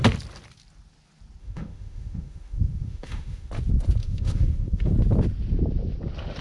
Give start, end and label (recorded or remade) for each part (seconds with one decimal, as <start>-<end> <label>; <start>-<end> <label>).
0.0-1.4 recorded; 1.4-3.5 remade; 3.5-4.0 recorded; 4.0-4.9 remade; 4.9-6.4 recorded